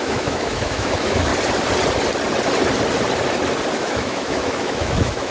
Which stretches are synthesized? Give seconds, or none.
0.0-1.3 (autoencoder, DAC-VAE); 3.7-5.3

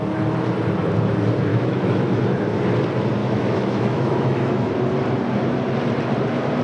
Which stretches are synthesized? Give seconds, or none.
1.5-2.2 (autoencoder, DAC-VAE); 3.2-4.7

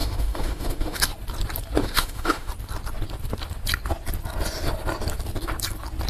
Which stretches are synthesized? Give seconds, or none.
0.0-1.0 (autoencoder, DAC-VAE); 1.8-2.5

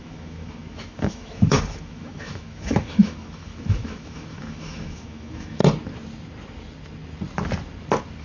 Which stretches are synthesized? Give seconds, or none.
0.0-5.6 (autoencoder, DAC-VAE)

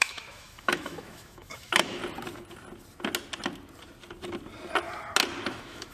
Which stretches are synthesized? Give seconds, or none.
0.0-2.0 (autoencoder, DAC-VAE); 5.5-5.9